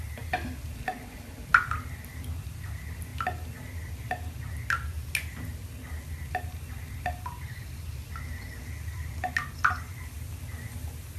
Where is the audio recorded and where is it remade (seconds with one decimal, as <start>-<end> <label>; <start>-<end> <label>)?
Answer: 0.0-11.2 recorded